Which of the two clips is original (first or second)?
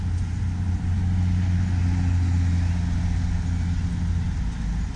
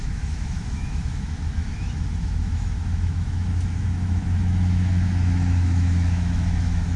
first